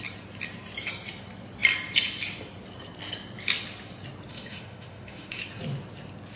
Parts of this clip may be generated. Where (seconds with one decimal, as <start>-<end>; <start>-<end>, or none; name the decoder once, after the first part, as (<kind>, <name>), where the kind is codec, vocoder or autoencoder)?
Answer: 4.3-5.4 (autoencoder, DAC-VAE)